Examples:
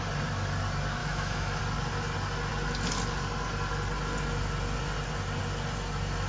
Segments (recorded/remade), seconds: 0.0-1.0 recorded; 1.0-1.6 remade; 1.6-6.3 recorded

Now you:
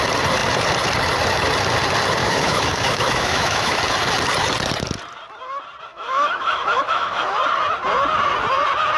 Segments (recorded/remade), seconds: 0.0-2.2 recorded; 2.2-3.8 remade; 3.8-5.9 recorded; 5.9-7.4 remade; 7.4-9.0 recorded

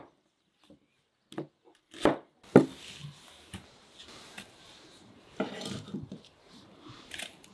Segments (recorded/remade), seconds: 0.0-3.0 recorded; 3.0-7.5 remade

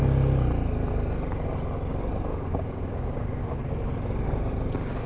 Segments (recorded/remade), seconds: 0.0-2.3 recorded; 2.3-3.6 remade; 3.6-5.1 recorded

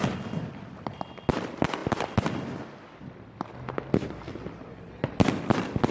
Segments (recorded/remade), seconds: 0.0-5.9 recorded

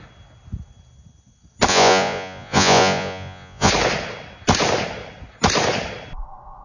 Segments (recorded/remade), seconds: 0.0-1.7 recorded; 1.7-3.7 remade; 3.7-6.6 recorded

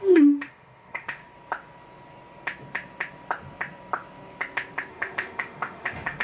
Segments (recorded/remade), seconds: 0.0-1.2 remade; 1.2-4.9 recorded; 4.9-6.2 remade